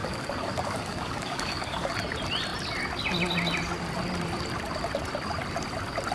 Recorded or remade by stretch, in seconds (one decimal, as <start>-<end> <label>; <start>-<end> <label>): 0.0-1.9 remade; 1.9-6.1 recorded